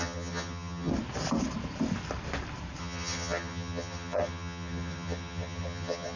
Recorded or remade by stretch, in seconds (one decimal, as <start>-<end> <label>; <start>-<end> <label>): 0.0-0.9 remade; 0.9-2.8 recorded; 2.8-6.2 remade